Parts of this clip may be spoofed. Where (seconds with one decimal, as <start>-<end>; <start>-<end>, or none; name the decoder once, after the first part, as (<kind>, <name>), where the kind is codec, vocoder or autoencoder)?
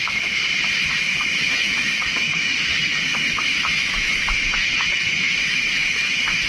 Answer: 0.0-0.4 (autoencoder, DAC-VAE); 1.4-6.5